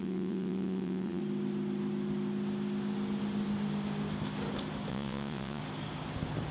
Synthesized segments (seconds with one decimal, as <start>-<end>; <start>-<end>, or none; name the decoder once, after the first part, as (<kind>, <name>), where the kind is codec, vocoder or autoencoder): 0.0-1.2 (vocoder, WaveNeXt); 4.9-5.6